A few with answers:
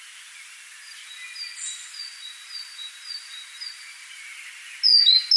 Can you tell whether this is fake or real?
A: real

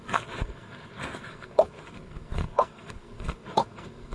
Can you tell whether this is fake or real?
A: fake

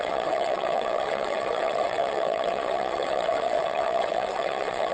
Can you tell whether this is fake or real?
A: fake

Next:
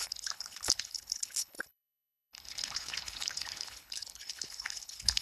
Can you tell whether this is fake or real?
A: fake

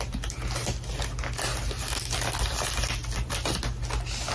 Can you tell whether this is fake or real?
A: real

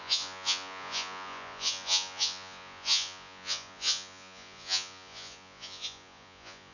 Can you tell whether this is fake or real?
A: fake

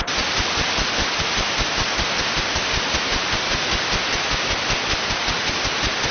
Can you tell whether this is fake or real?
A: real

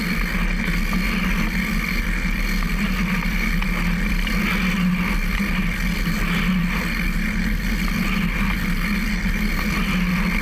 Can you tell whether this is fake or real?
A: real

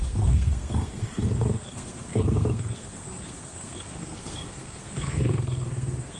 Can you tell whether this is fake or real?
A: fake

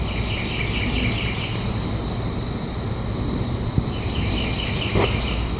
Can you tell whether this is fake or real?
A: real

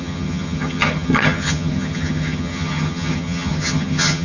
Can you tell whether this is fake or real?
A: fake